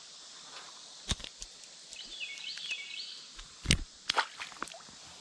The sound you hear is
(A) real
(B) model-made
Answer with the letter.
B